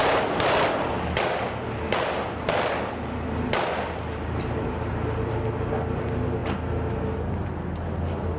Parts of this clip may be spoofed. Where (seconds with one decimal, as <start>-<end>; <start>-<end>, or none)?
none